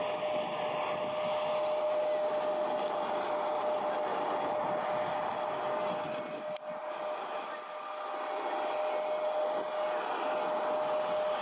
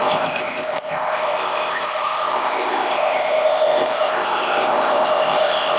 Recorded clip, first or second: first